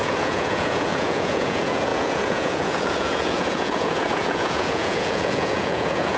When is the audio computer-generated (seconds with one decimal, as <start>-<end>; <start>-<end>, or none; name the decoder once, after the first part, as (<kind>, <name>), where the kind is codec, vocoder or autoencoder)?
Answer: 0.0-6.2 (vocoder, Vocos)